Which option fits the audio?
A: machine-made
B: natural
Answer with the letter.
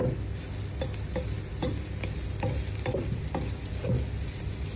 B